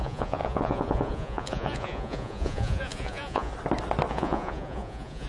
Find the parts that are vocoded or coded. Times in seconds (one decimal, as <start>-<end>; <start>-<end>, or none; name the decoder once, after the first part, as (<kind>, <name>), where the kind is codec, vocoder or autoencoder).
0.0-3.5 (vocoder, Vocos); 4.1-5.3

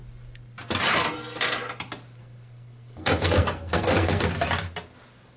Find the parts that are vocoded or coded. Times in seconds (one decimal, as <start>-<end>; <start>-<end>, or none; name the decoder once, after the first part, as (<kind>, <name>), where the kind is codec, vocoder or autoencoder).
2.2-4.3 (codec, SNAC)

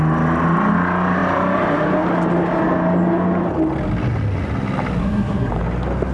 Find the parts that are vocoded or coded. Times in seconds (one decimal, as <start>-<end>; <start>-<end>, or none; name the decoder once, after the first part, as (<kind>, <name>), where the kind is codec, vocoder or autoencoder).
5.0-5.5 (codec, SNAC)

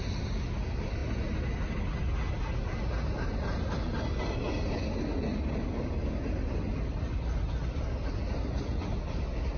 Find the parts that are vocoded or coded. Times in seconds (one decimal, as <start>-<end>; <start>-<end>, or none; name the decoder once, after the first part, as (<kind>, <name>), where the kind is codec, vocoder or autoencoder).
none

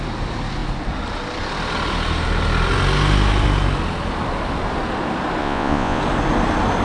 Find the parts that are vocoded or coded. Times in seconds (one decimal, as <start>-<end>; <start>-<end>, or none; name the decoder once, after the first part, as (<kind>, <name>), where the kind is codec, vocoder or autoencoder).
5.4-6.0 (vocoder, Vocos)